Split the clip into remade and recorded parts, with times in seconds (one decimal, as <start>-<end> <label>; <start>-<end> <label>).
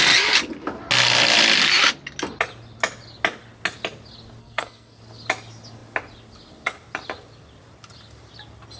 0.0-4.4 recorded; 4.4-5.0 remade; 5.0-8.8 recorded